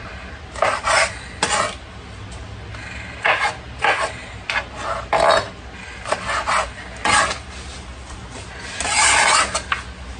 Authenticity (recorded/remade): recorded